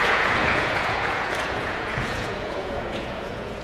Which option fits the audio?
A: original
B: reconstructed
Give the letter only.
B